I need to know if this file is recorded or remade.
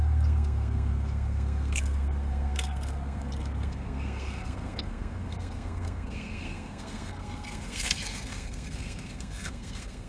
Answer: remade